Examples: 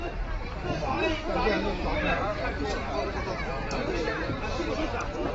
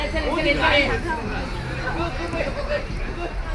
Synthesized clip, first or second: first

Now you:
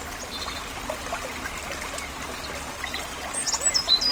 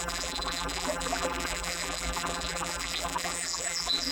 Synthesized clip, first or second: second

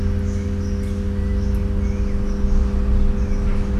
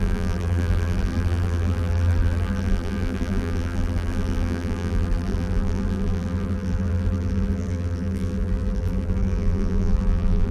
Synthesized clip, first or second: second